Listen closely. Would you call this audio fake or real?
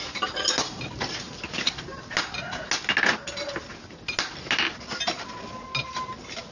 real